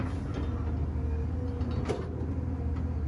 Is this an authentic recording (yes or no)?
yes